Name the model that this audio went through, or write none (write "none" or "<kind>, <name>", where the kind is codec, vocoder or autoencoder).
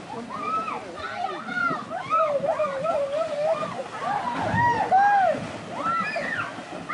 none